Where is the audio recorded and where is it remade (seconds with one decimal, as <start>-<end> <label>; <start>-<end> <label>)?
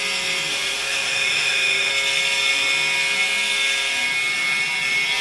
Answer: 0.0-0.5 recorded; 0.5-1.9 remade; 1.9-5.2 recorded